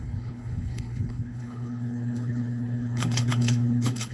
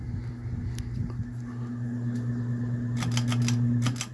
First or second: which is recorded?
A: second